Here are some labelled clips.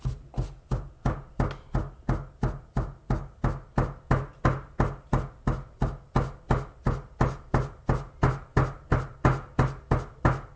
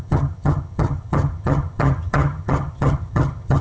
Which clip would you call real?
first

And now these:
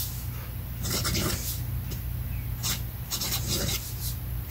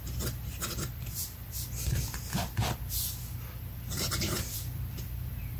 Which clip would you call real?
first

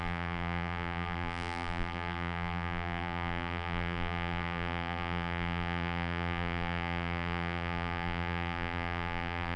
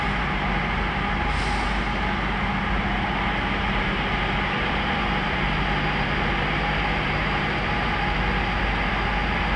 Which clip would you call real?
second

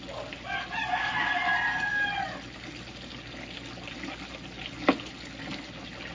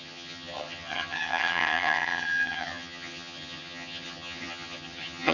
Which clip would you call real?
first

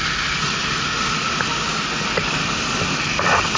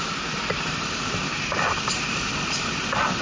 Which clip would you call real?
first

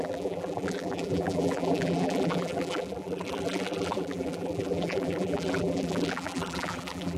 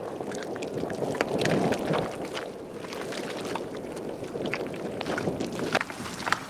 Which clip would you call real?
second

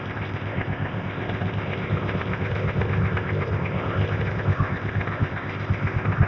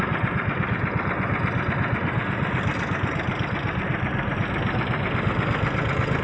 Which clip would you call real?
second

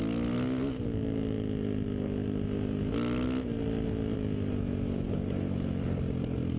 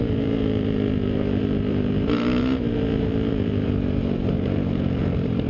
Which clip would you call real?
first